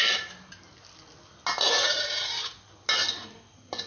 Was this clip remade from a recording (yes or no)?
no